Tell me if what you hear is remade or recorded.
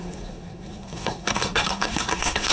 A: remade